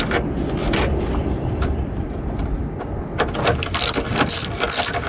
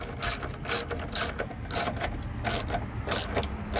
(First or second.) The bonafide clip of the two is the second